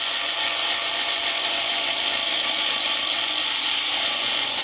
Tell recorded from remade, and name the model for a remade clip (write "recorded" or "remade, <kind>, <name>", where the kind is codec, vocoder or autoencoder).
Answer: remade, vocoder, Vocos